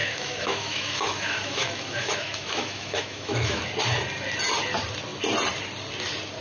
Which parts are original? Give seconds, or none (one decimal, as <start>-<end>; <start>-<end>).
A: 3.6-6.4

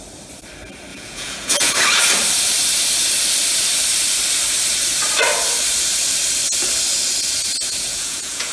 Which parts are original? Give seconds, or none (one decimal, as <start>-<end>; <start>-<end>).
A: 0.0-0.9; 1.7-7.9

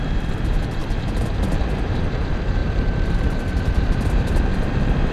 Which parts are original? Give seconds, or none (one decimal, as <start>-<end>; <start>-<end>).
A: none

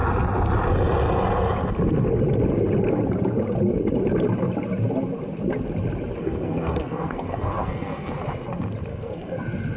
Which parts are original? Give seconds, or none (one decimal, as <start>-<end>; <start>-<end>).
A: 0.0-6.2; 8.1-8.9; 9.4-9.8